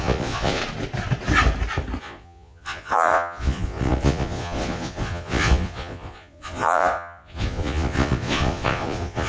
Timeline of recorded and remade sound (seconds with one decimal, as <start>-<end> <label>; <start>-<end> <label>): 0.0-0.6 remade; 0.6-2.0 recorded; 2.0-9.3 remade